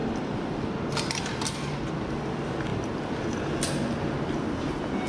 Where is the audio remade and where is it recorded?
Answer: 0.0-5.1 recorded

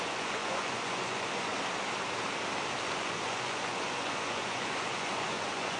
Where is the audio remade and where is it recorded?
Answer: 0.0-1.5 remade; 1.5-2.8 recorded; 2.8-5.8 remade

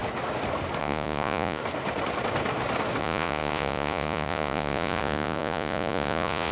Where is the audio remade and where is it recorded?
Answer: 0.0-0.8 recorded; 0.8-1.6 remade; 1.6-3.0 recorded; 3.0-6.5 remade

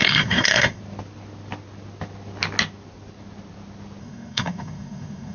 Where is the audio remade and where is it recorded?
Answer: 0.0-0.8 remade; 0.8-4.0 recorded; 4.0-5.3 remade